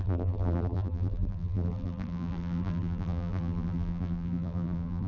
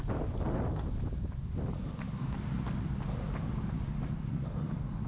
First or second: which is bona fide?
second